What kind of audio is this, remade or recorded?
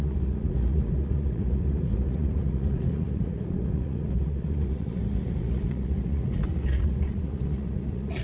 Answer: remade